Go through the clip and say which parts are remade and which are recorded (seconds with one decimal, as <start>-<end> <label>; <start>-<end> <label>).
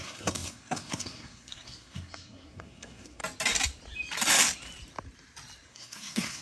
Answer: 0.0-3.2 remade; 3.2-5.7 recorded; 5.7-6.4 remade